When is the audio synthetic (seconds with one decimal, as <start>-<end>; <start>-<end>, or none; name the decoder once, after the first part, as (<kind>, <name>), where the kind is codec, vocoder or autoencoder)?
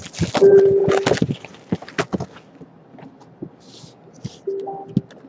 none